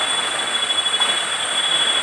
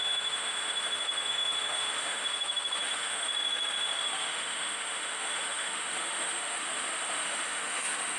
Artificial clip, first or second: second